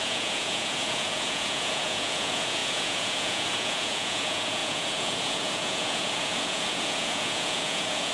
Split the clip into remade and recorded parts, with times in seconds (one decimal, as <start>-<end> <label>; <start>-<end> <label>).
0.0-8.1 remade